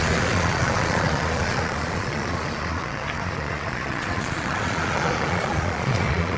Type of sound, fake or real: fake